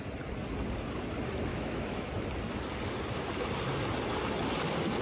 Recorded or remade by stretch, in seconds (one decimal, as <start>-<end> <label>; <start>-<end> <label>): 0.0-1.5 recorded; 1.5-2.1 remade; 2.1-5.0 recorded